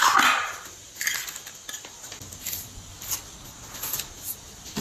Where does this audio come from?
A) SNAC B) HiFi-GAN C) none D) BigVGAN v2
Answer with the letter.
C